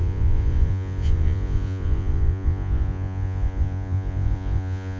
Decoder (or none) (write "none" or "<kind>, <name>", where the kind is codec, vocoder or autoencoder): vocoder, Vocos